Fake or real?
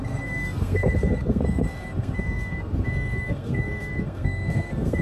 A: fake